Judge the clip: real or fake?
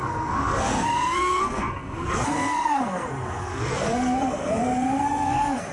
fake